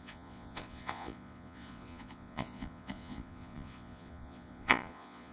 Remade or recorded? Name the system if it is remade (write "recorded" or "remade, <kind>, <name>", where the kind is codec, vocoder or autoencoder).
remade, vocoder, Vocos